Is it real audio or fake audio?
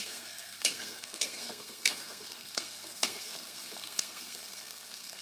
fake